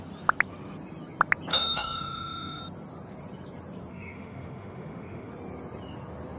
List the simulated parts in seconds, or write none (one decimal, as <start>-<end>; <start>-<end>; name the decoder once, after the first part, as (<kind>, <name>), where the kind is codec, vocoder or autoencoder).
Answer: 1.5-2.6 (autoencoder, DAC-VAE); 3.9-5.3